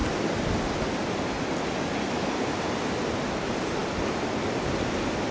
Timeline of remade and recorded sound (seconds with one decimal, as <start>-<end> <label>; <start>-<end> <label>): 0.0-5.3 recorded